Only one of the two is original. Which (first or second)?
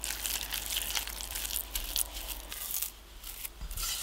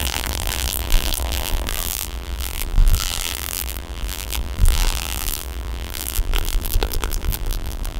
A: first